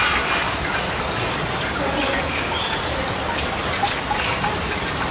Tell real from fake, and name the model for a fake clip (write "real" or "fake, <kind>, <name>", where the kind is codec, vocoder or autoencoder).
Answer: real